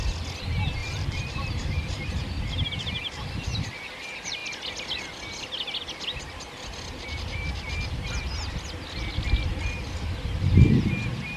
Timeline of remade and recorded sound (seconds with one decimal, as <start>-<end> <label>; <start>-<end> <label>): 0.0-0.8 recorded; 0.8-2.1 remade; 2.1-11.4 recorded